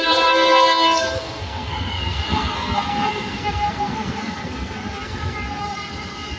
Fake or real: fake